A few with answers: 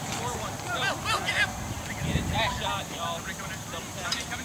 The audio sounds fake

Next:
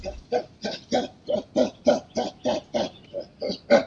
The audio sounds real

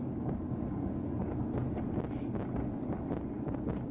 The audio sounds real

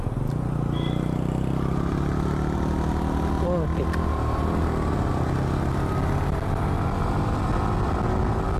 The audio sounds real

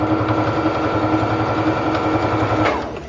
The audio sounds real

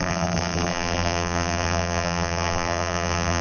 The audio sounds fake